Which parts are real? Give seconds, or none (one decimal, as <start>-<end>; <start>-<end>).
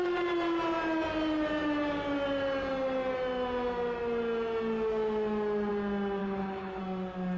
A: 0.0-6.2; 6.8-7.4